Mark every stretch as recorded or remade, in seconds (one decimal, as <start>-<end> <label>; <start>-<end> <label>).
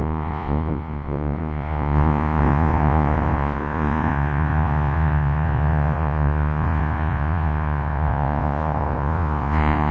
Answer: 0.0-9.9 remade